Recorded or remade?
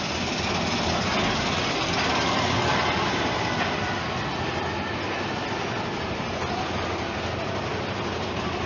recorded